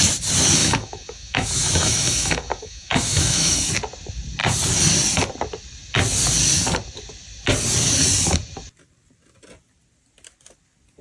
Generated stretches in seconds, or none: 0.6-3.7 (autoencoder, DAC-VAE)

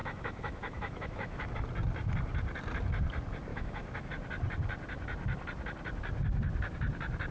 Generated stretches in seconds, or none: 0.0-1.5 (autoencoder, DAC-VAE); 3.5-4.1

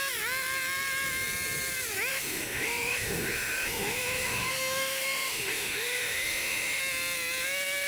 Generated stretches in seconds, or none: 2.1-6.8 (autoencoder, DAC-VAE)

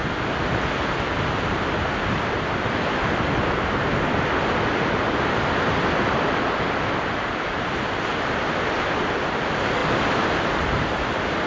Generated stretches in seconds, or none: none